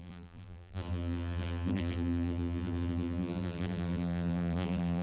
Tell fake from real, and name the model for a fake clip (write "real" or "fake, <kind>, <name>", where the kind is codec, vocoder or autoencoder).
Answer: fake, vocoder, BigVGAN v2